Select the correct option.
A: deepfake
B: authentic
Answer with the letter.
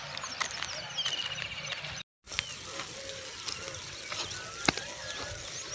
B